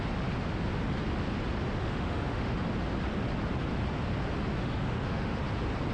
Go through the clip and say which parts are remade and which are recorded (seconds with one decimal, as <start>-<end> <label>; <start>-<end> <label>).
0.0-1.8 recorded; 1.8-2.6 remade; 2.6-4.6 recorded; 4.6-5.4 remade; 5.4-5.9 recorded